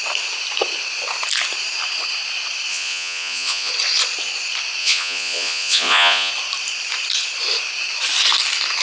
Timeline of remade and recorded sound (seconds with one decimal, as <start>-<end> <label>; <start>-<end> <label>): 0.0-2.7 recorded; 2.7-3.7 remade; 3.7-4.8 recorded; 4.8-6.3 remade; 6.3-8.8 recorded